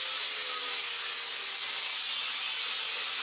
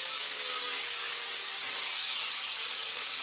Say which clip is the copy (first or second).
second